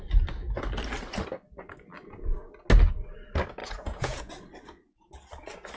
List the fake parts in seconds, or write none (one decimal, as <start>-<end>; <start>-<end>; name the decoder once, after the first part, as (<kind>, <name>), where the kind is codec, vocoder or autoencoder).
3.6-4.3 (vocoder, Vocos)